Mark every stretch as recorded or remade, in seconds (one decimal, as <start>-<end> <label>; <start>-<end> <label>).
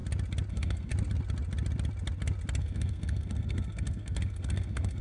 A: 0.0-0.5 recorded; 0.5-0.9 remade; 0.9-2.6 recorded; 2.6-5.0 remade